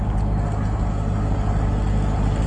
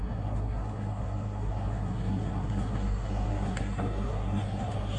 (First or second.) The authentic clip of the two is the first